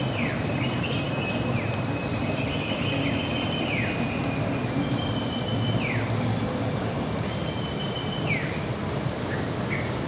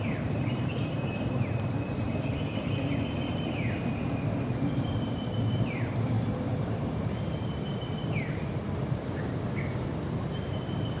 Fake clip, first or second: second